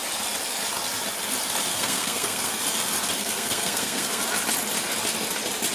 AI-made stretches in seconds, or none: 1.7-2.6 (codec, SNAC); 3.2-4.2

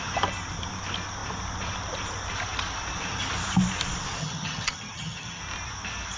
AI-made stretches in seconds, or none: 4.2-5.4 (vocoder, HiFi-GAN)

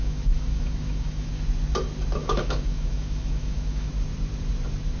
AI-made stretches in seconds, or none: 0.0-1.3 (autoencoder, DAC-VAE); 2.2-3.9

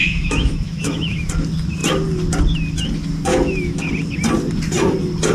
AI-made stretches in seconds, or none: 0.0-1.2 (autoencoder, DAC-VAE); 3.3-3.9

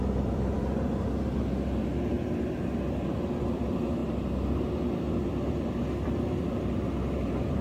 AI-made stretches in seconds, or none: 0.0-4.0 (vocoder, BigVGAN v2); 4.9-7.6

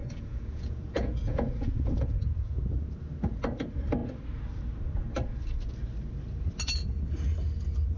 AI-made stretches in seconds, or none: 0.0-2.6 (vocoder, Vocos)